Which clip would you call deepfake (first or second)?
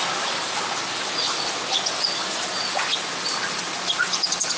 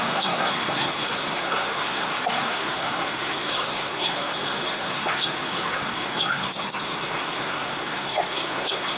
second